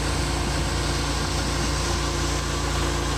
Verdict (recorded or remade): recorded